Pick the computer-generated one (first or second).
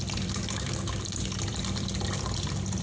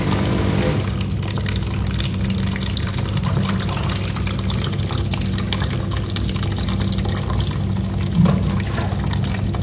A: first